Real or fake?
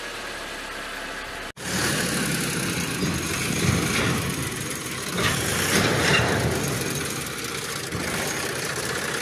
real